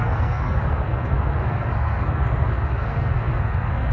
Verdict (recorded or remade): remade